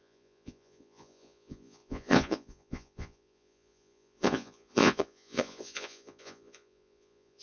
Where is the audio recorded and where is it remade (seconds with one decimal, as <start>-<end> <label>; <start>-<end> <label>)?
0.0-7.4 remade